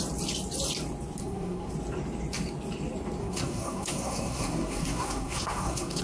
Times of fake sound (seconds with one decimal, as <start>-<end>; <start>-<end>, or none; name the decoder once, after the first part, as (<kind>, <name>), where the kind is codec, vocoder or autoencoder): 1.2-1.7 (codec, SNAC); 3.2-6.0